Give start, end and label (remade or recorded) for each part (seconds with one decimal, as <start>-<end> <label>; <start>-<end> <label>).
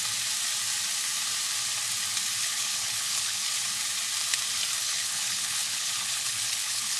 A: 0.0-2.4 recorded; 2.4-3.5 remade; 3.5-4.8 recorded; 4.8-7.0 remade